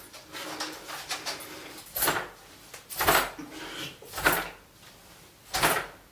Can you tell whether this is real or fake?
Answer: real